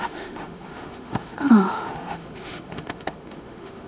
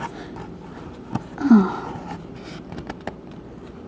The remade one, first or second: first